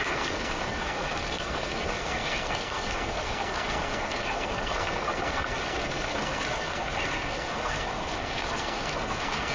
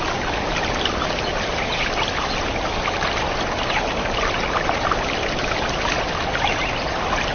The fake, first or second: first